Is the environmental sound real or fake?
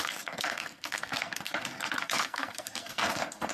fake